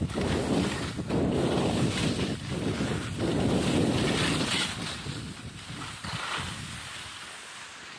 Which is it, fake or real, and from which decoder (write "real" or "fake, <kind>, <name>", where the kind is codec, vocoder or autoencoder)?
real